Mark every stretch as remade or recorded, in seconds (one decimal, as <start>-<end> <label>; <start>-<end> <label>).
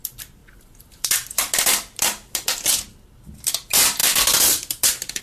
0.0-5.2 recorded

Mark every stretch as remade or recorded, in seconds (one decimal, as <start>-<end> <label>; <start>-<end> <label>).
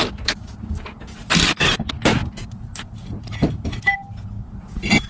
0.0-5.1 recorded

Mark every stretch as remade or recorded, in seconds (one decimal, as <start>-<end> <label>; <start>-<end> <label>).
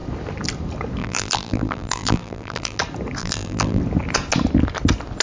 0.0-1.0 recorded; 1.0-2.8 remade; 2.8-3.2 recorded; 3.2-3.8 remade; 3.8-5.2 recorded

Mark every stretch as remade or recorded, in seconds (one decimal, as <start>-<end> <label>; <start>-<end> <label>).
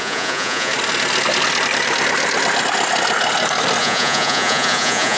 0.0-0.7 remade; 0.7-3.8 recorded; 3.8-5.2 remade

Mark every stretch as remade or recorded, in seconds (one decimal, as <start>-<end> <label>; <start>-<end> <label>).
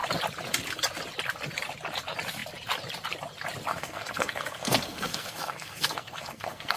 0.0-3.7 recorded; 3.7-6.8 remade